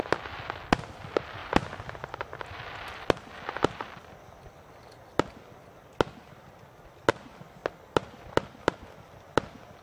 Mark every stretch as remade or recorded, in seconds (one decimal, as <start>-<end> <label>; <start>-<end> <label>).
0.0-9.8 recorded